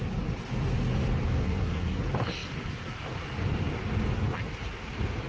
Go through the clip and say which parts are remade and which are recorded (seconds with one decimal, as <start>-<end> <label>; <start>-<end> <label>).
0.0-1.4 recorded; 1.4-2.0 remade; 2.0-5.3 recorded